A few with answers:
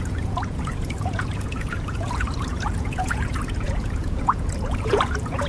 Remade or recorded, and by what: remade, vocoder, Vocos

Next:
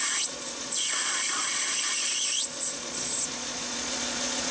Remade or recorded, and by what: remade, vocoder, Vocos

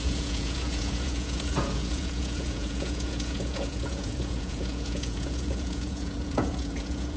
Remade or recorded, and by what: remade, vocoder, Vocos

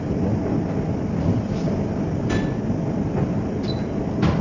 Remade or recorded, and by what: recorded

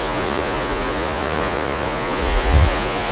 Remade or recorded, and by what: remade, vocoder, Vocos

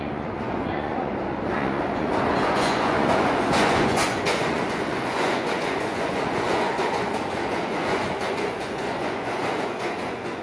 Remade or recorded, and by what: remade, vocoder, Vocos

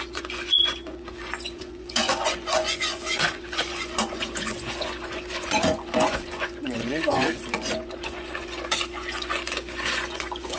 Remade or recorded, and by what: remade, vocoder, Vocos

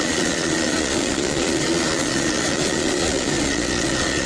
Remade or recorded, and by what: remade, vocoder, Vocos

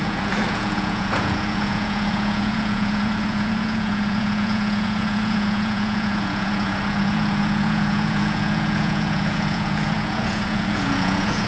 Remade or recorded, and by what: remade, vocoder, Vocos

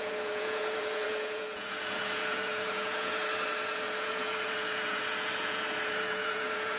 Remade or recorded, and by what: remade, vocoder, Vocos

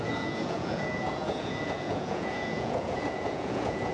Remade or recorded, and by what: remade, vocoder, Vocos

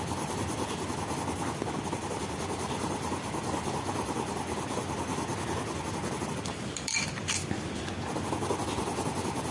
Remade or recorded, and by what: recorded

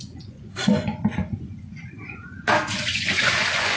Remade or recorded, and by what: remade, vocoder, Vocos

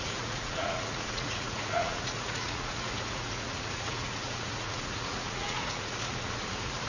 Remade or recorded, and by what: remade, vocoder, Vocos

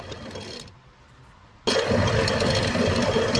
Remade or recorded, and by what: recorded